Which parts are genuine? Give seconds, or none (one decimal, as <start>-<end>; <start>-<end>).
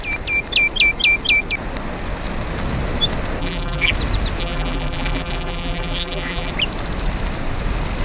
0.0-3.4; 3.9-4.4; 6.5-8.0